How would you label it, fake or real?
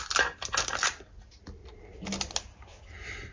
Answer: real